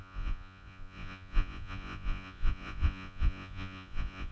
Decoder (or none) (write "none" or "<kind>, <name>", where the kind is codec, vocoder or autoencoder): vocoder, Vocos